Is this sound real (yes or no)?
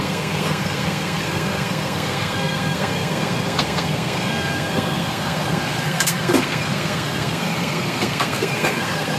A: no